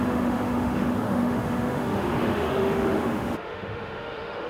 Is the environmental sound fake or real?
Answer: fake